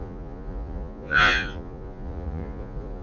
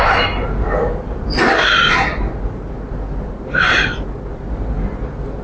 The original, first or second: second